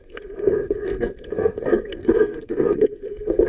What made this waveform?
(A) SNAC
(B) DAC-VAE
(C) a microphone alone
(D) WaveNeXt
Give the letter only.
A